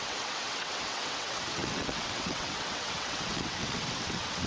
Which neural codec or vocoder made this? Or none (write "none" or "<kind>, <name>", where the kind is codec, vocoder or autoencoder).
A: vocoder, WaveNeXt